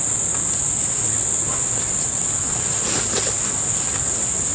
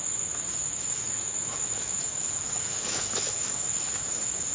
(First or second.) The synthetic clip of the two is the second